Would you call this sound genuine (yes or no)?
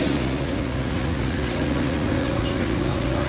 no